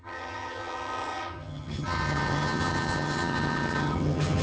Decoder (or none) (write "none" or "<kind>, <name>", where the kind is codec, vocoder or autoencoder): vocoder, HiFi-GAN